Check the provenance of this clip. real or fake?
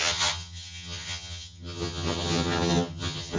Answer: fake